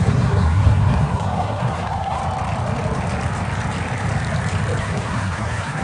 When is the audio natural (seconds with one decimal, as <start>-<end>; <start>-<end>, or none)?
2.2-4.8